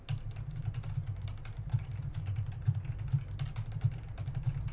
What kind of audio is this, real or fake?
real